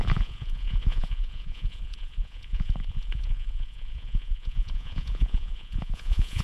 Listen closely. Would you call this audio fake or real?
fake